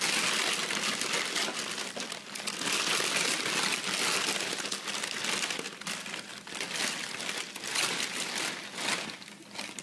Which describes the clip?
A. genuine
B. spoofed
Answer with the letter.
A